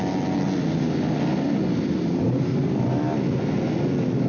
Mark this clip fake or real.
real